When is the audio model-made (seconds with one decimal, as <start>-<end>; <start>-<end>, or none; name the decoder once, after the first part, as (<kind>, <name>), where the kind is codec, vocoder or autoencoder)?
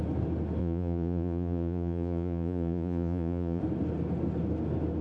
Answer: 0.6-3.6 (vocoder, Vocos)